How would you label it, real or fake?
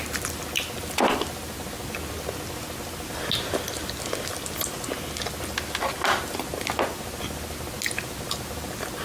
real